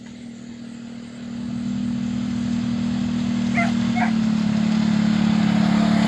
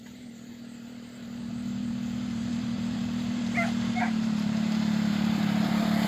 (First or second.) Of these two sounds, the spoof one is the second